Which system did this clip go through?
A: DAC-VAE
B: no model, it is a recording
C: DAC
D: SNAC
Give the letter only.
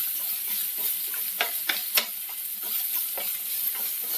B